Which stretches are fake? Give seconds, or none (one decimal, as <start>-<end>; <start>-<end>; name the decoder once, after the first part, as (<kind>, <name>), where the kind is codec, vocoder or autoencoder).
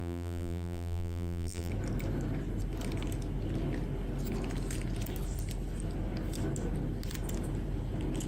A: 0.0-1.7 (vocoder, BigVGAN v2)